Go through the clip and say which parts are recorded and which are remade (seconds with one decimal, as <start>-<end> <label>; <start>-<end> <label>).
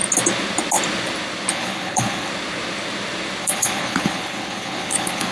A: 0.0-1.5 recorded; 1.5-2.3 remade; 2.3-3.4 recorded; 3.4-5.3 remade